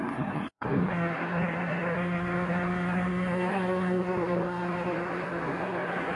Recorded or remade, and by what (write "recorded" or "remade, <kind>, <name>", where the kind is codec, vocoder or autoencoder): remade, codec, SNAC